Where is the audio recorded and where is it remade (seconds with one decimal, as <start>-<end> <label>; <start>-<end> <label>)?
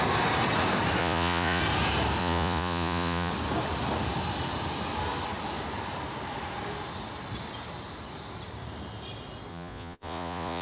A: 0.0-1.0 recorded; 1.0-1.6 remade; 1.6-2.2 recorded; 2.2-3.3 remade; 3.3-9.5 recorded; 9.5-10.6 remade